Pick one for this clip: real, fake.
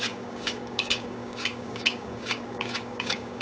fake